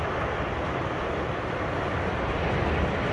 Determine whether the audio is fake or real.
real